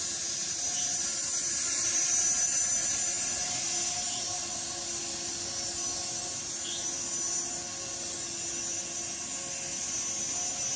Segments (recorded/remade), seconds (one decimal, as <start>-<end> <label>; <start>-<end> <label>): 0.0-10.8 recorded